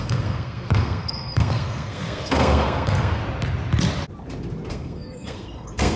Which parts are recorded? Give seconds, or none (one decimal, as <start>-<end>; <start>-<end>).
3.2-4.7

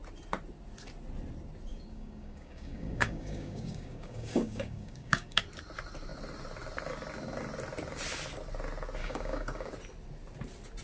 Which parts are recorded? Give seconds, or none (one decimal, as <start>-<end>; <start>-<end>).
0.0-1.7; 5.4-9.0; 9.7-10.8

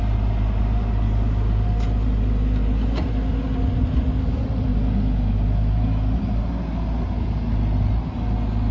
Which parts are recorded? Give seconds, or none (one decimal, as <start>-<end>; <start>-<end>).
0.0-8.7

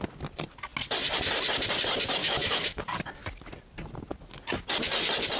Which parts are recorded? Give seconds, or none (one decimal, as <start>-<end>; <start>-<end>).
0.0-2.2; 2.8-5.4

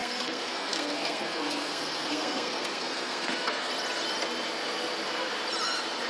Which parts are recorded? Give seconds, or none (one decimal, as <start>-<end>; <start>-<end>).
3.7-6.1

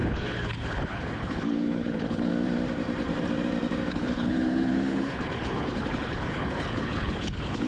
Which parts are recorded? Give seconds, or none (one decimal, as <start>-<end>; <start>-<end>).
2.3-3.9

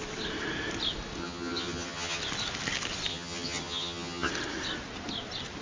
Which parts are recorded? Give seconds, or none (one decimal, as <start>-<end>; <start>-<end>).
0.0-1.2; 2.2-3.1; 4.3-5.6

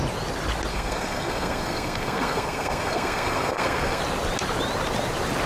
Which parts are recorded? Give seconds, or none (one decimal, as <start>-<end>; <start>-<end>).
0.0-0.7; 4.0-5.5